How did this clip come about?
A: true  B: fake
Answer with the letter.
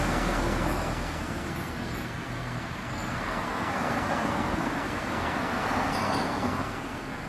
B